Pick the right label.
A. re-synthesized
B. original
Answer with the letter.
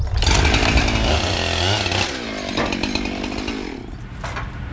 B